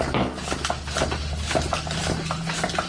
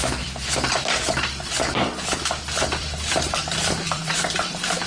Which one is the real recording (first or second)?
first